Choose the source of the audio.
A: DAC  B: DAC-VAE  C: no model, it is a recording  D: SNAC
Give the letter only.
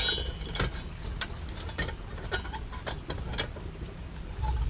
C